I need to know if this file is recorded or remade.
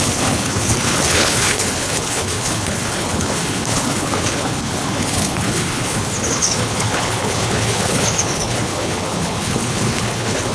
remade